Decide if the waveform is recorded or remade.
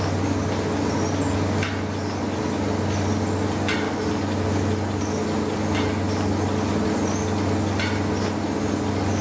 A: recorded